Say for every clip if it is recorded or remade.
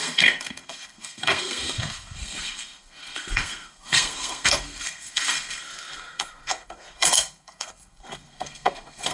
remade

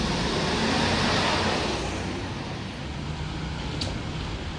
recorded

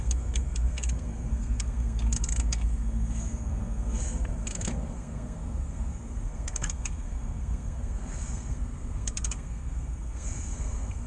remade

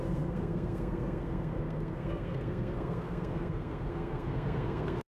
remade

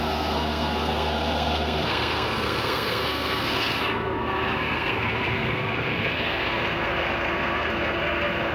remade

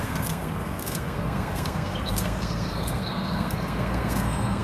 remade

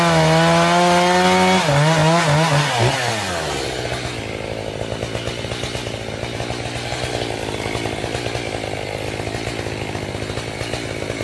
recorded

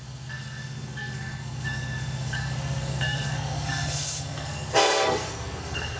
remade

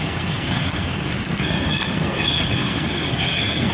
remade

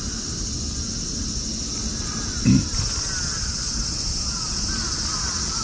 recorded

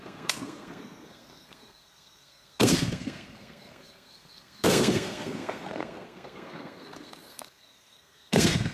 remade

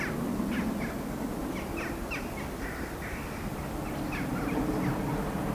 recorded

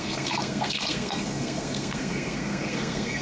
remade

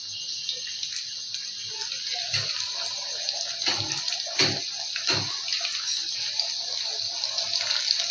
recorded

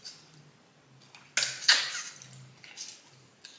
recorded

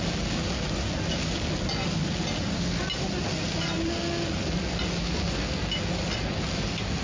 recorded